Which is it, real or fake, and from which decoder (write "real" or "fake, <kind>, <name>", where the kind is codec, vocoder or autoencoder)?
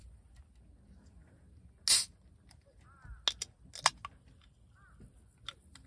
real